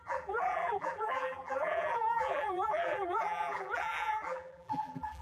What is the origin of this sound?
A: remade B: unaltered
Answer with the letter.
A